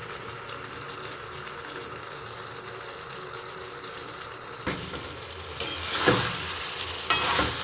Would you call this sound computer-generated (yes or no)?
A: no